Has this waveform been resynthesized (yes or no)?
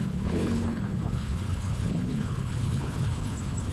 yes